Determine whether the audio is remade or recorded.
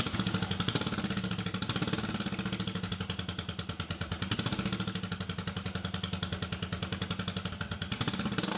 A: recorded